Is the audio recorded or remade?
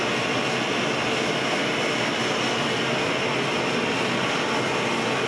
recorded